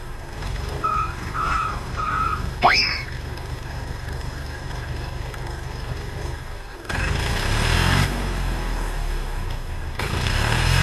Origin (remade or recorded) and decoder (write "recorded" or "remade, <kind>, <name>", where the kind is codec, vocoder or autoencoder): remade, codec, DAC